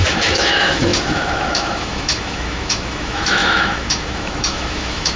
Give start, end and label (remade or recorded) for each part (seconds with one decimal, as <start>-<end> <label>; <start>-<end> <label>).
0.0-5.2 remade